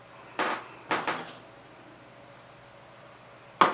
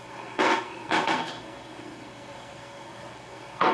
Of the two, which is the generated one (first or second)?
second